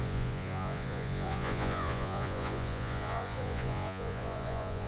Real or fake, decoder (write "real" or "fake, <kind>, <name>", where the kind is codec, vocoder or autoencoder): fake, vocoder, Vocos